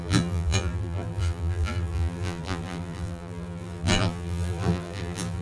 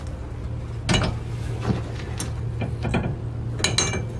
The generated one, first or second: first